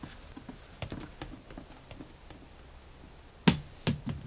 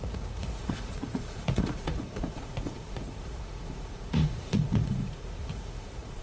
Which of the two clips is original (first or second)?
first